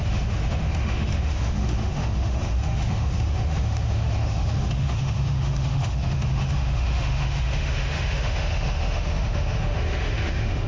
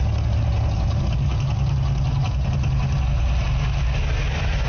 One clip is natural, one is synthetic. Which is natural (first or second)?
second